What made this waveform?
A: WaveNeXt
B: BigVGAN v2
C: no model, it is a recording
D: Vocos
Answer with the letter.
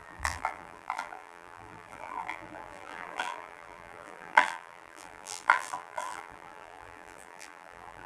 B